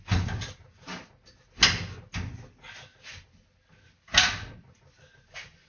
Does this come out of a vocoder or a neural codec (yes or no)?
no